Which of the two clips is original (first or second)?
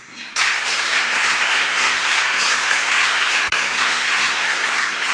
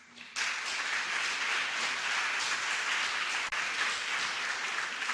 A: second